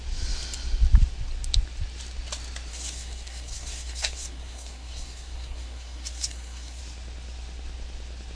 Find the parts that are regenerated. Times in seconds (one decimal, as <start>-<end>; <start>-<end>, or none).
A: 2.7-6.8